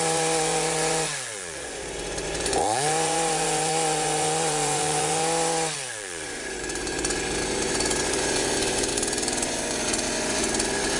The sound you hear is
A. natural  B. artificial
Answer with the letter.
B